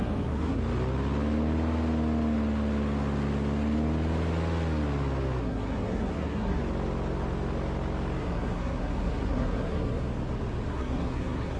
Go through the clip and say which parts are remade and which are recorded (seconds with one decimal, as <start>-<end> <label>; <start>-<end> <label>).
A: 0.0-0.6 remade; 0.6-5.4 recorded; 5.4-6.6 remade; 6.6-8.2 recorded; 8.2-10.1 remade; 10.1-10.7 recorded; 10.7-11.6 remade